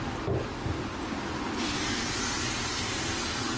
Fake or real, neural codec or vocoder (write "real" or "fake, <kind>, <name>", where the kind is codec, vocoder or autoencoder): real